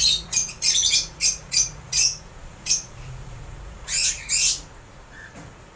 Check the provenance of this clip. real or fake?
fake